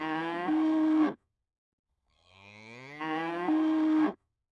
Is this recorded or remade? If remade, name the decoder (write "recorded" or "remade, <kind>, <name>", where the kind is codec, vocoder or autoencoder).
remade, codec, SNAC